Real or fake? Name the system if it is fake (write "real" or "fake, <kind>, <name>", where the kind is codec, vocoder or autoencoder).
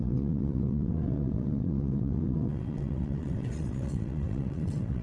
fake, vocoder, WaveNeXt